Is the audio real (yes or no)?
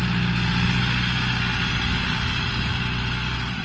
yes